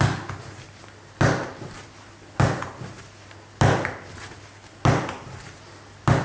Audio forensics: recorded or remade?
recorded